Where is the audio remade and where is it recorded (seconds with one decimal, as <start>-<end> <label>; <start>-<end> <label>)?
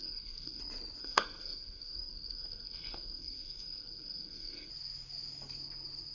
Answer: 0.0-0.6 remade; 0.6-1.0 recorded; 1.0-4.7 remade; 4.7-6.1 recorded